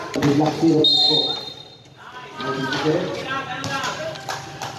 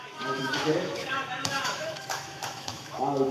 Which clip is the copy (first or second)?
second